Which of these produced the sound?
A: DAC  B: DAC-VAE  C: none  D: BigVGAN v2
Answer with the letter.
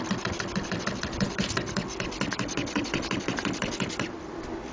D